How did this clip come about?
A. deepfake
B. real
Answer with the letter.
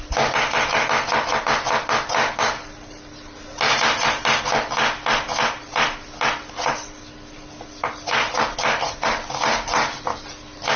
B